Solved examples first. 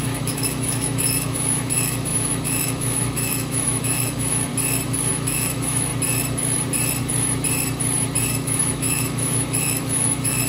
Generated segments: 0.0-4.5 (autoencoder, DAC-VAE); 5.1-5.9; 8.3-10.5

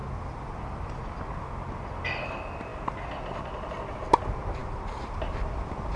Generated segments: 0.0-0.9 (vocoder, BigVGAN v2); 4.6-6.0

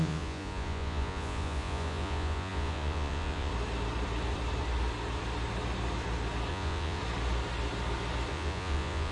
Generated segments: 0.0-3.5 (vocoder, Vocos); 6.5-7.0; 8.3-9.1

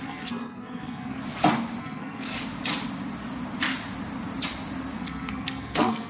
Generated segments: 0.0-1.2 (codec, SNAC); 1.8-2.3; 5.0-6.1

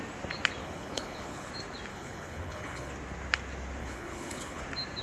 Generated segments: 0.6-1.5 (codec, HILCodec); 1.9-2.9; 3.8-4.6

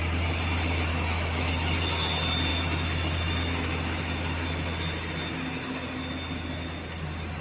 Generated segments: 0.9-1.5 (autoencoder, DAC-VAE); 2.5-4.0

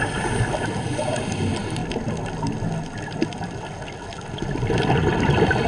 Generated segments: none

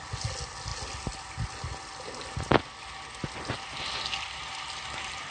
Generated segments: none